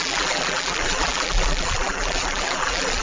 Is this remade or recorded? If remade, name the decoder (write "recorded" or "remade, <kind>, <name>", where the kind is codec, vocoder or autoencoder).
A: remade, vocoder, BigVGAN v2